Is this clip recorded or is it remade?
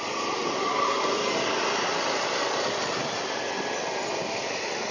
recorded